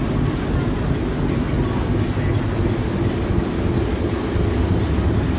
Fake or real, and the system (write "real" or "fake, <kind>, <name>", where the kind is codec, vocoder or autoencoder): real